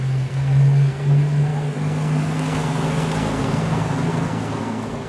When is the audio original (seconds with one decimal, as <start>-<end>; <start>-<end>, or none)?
none